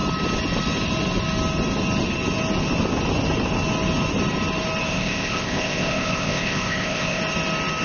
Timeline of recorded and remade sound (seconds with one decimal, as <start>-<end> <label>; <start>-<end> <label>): 0.0-4.9 recorded; 4.9-7.2 remade; 7.2-7.8 recorded